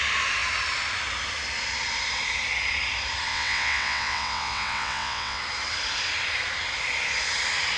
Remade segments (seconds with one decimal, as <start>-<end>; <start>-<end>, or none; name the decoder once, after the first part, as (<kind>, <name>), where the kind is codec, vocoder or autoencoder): 3.3-5.4 (vocoder, WaveNeXt)